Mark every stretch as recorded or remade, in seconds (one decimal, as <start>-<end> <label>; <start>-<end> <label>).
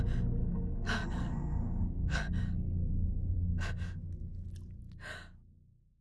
0.0-0.4 recorded; 0.4-4.0 remade; 4.0-6.0 recorded